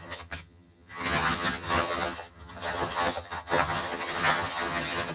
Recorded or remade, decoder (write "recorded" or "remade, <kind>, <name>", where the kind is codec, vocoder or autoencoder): remade, vocoder, HiFi-GAN